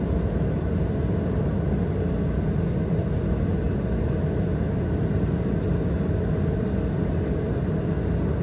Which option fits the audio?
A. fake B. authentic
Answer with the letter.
B